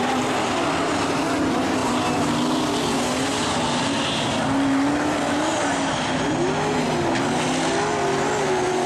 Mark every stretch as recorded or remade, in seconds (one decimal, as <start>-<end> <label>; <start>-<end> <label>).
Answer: 0.0-8.9 recorded